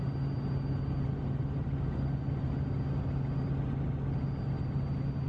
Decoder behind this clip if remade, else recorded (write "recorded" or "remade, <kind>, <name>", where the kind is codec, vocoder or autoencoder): recorded